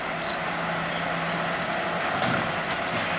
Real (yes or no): yes